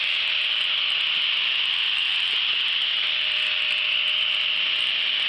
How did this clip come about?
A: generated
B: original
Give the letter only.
B